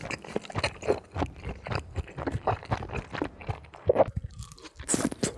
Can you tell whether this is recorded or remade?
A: recorded